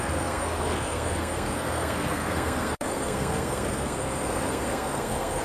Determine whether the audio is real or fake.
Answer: fake